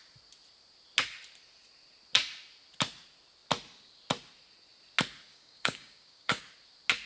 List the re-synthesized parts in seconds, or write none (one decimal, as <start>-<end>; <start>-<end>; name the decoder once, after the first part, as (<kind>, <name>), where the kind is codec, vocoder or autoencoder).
5.3-6.4 (codec, DAC)